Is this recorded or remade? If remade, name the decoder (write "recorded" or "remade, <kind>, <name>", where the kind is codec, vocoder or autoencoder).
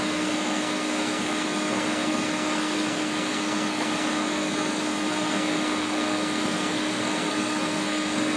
remade, codec, SNAC